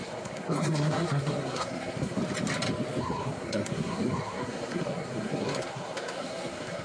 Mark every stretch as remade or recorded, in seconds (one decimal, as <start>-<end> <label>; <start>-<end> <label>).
0.0-2.2 remade; 2.2-3.0 recorded; 3.0-6.8 remade